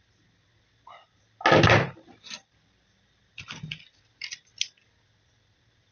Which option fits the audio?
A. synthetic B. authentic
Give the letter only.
B